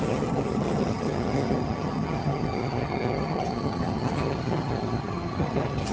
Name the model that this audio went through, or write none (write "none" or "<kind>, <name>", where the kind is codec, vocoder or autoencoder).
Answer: vocoder, HiFi-GAN